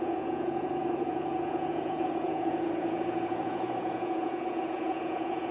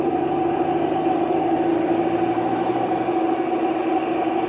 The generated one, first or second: first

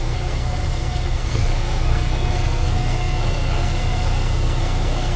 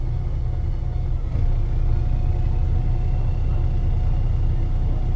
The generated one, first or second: first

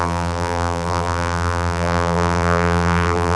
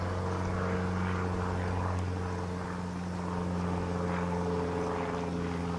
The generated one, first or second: first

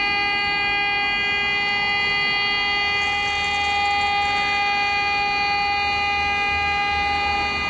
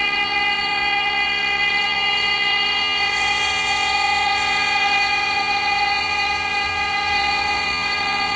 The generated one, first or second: second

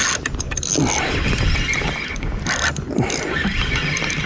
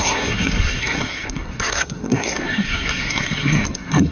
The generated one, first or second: second